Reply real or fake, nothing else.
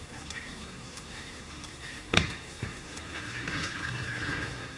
fake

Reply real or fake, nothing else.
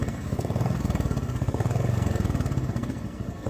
fake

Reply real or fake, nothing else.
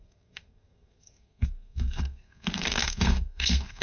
fake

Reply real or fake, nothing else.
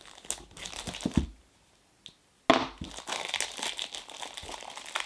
real